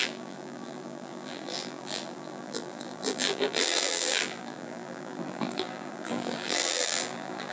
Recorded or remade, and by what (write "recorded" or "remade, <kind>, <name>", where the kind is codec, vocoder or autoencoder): remade, vocoder, BigVGAN v2